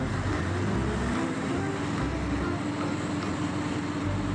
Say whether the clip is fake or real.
real